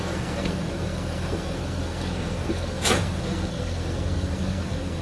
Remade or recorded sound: remade